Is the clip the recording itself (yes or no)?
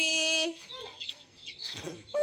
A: no